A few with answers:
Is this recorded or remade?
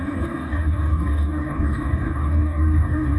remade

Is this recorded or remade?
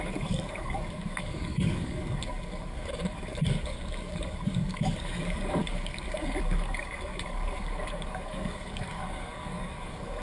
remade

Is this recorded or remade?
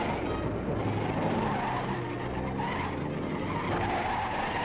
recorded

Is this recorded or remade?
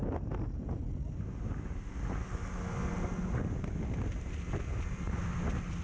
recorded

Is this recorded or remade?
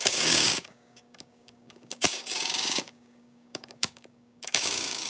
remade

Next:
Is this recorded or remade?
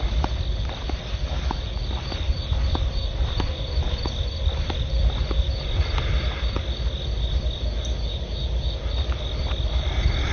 recorded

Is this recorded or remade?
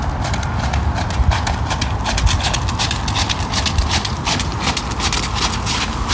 recorded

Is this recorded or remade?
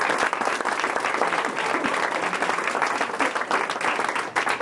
recorded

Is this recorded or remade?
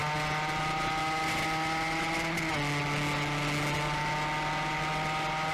recorded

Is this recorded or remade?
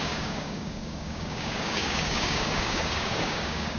remade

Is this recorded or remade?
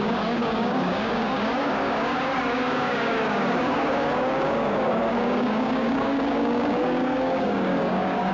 remade